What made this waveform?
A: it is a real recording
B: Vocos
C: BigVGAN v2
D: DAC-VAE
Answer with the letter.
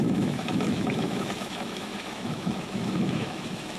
D